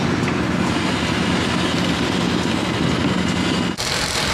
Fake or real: real